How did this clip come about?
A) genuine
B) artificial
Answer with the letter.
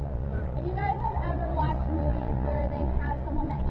B